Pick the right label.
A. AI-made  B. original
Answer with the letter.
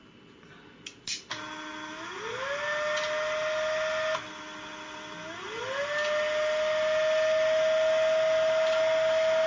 B